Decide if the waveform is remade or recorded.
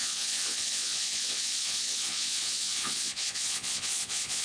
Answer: remade